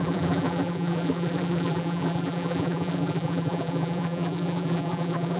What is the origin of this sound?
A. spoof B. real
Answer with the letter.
A